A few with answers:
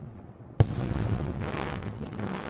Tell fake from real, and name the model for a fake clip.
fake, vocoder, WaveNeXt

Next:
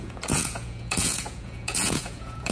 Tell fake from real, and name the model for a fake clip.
fake, vocoder, Vocos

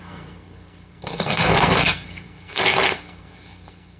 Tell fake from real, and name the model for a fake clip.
fake, codec, SNAC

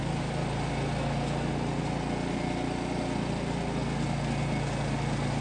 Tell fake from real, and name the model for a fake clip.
real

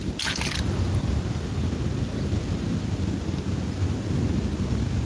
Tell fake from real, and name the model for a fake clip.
real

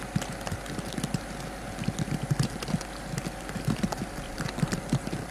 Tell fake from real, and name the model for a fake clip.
real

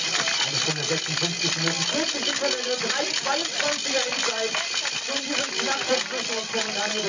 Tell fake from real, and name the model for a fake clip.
real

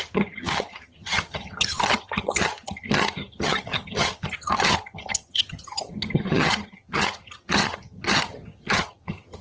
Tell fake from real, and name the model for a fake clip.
fake, vocoder, HiFi-GAN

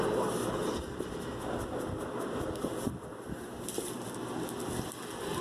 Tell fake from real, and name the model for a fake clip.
real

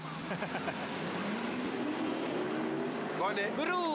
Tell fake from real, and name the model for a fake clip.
real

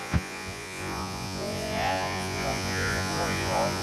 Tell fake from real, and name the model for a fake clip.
fake, vocoder, Vocos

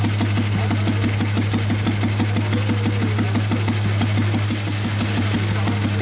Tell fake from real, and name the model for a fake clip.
real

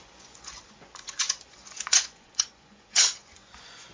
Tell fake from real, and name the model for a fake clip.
fake, vocoder, Vocos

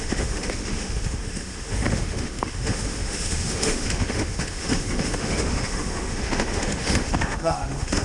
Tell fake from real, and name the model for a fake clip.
fake, autoencoder, DAC-VAE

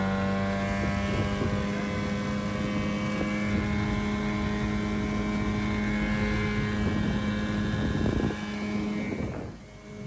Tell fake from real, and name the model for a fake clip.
real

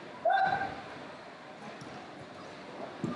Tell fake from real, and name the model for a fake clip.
real